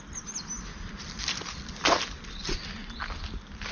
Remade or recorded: recorded